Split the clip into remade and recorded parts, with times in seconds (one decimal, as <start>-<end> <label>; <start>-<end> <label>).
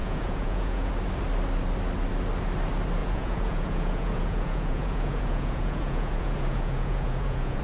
0.0-0.9 remade; 0.9-3.0 recorded; 3.0-7.6 remade